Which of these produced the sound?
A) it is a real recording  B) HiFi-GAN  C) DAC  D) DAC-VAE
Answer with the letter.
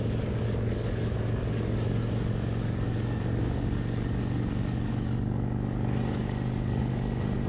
C